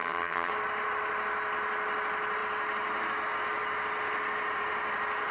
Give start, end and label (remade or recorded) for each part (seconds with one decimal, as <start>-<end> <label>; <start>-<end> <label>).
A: 0.0-0.5 remade; 0.5-5.3 recorded